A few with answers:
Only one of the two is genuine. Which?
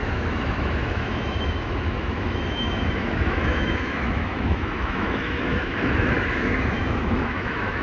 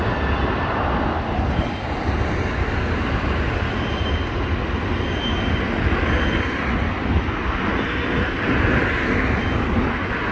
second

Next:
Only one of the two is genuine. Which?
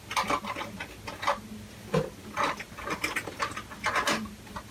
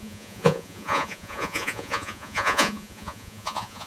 first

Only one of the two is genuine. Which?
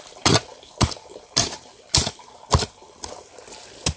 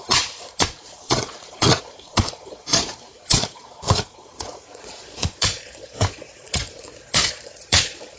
first